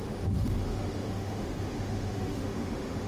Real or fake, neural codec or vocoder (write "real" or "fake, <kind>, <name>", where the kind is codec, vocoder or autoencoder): fake, autoencoder, DAC-VAE